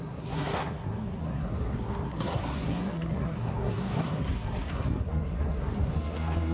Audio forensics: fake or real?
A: fake